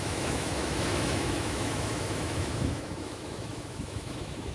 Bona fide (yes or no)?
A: no